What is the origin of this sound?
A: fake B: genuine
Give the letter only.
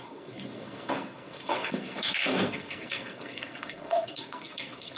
A